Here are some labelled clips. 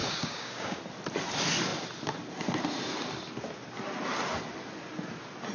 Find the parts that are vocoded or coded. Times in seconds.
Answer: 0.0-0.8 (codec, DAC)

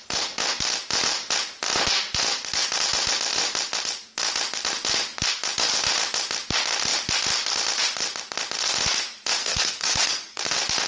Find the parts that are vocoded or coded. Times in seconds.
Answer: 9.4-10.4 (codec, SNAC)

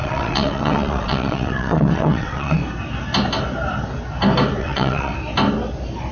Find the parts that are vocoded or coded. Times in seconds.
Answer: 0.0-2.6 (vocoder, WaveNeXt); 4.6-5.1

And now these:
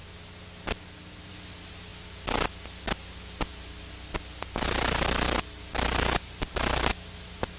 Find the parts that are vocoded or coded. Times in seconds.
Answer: none

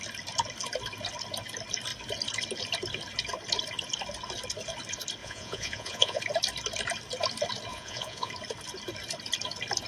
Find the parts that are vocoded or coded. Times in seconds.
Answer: 5.2-6.2 (vocoder, Vocos); 7.7-8.3

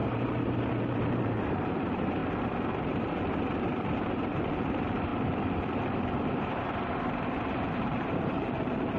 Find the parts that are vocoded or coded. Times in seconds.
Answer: 0.0-2.2 (vocoder, BigVGAN v2); 2.7-5.1; 7.7-9.0

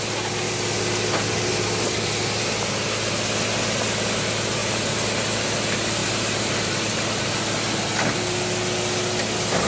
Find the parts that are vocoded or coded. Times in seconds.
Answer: 6.0-7.3 (vocoder, BigVGAN v2)